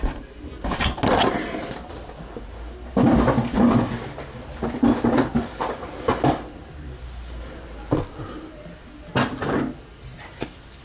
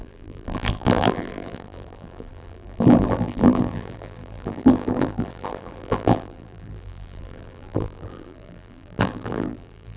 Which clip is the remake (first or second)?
second